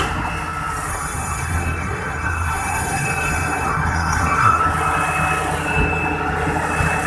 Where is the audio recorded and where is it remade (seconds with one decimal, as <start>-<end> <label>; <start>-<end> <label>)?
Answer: 0.0-0.9 recorded; 0.9-4.6 remade; 4.6-7.1 recorded